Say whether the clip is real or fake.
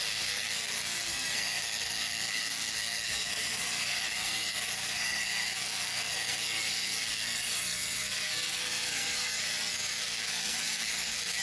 fake